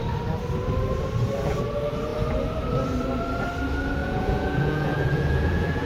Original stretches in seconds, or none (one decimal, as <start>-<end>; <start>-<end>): 0.0-4.0